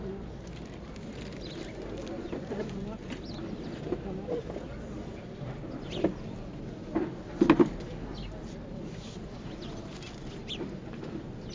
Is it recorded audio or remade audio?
recorded